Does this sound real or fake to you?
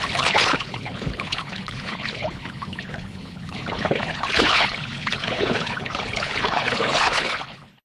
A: fake